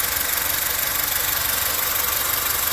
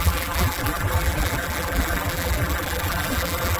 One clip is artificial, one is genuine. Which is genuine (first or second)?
first